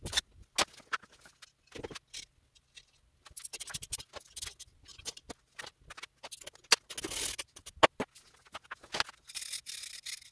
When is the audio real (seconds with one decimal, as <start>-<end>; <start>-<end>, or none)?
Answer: 0.0-10.3